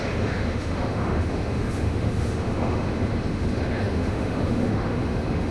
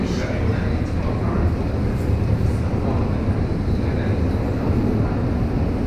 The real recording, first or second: second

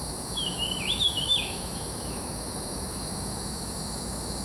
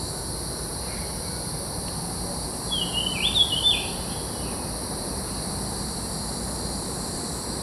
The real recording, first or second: second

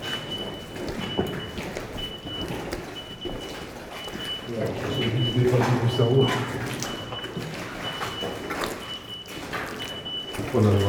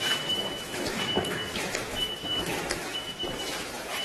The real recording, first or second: first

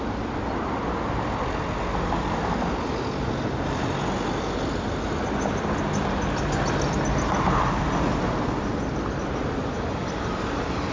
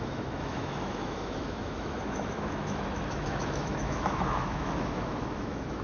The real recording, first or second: first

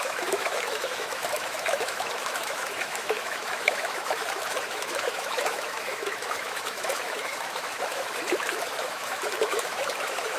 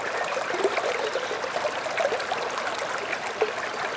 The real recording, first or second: second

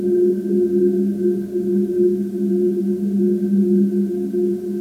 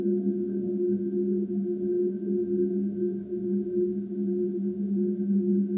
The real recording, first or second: first